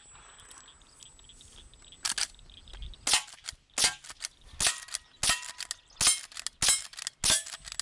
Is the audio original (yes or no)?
yes